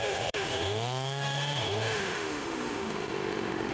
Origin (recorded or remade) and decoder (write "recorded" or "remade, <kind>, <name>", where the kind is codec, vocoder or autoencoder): remade, autoencoder, DAC-VAE